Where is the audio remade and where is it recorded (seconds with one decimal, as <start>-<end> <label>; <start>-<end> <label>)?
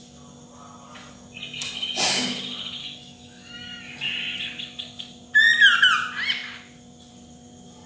0.0-2.8 recorded; 2.8-3.8 remade; 3.8-7.9 recorded